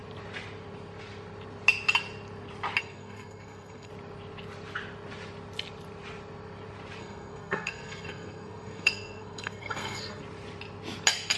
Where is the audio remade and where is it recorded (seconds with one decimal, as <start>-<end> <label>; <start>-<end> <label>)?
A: 0.0-2.8 recorded; 2.8-3.9 remade; 3.9-7.0 recorded; 7.0-10.2 remade; 10.2-11.4 recorded